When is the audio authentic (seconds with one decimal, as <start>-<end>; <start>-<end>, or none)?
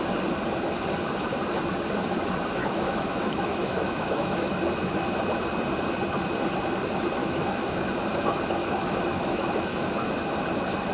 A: 0.0-2.6; 4.6-7.2; 7.8-8.6; 9.9-10.9